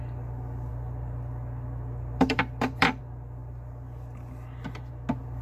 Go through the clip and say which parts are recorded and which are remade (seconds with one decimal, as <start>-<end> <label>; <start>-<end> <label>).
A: 0.0-0.7 recorded; 0.7-3.0 remade; 3.0-3.4 recorded; 3.4-4.9 remade; 4.9-5.4 recorded